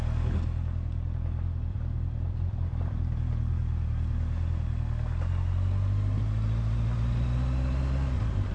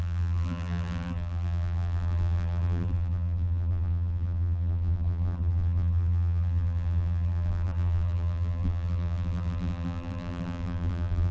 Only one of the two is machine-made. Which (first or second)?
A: second